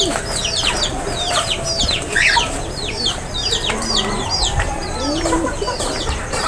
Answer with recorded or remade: remade